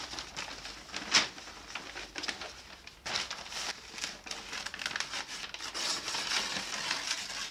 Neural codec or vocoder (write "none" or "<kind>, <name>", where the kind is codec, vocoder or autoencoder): none